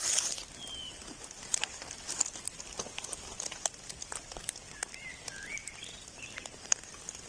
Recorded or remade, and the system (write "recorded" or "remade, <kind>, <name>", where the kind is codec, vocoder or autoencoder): recorded